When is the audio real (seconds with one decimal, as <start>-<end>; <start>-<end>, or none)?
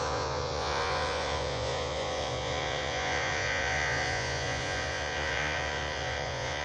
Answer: none